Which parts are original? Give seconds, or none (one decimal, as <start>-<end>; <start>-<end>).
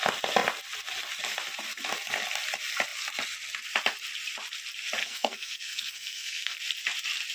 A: 0.0-5.0; 6.6-7.3